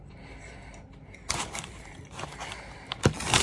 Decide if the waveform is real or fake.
real